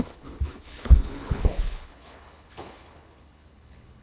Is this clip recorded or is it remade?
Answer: remade